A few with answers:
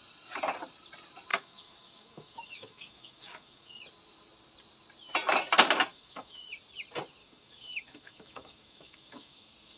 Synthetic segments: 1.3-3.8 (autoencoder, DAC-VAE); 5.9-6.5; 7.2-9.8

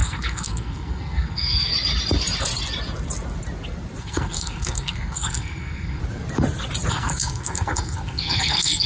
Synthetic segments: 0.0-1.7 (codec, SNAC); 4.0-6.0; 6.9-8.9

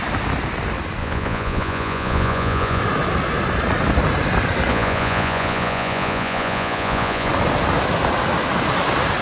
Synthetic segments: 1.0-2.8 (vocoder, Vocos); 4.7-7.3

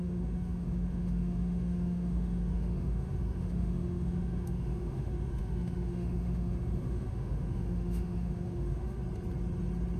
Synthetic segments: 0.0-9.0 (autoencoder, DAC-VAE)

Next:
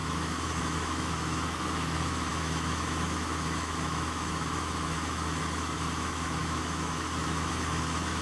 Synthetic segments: 0.0-8.2 (autoencoder, DAC-VAE)